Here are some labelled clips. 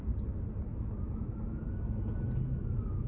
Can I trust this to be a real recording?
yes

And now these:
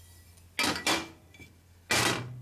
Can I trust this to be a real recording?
yes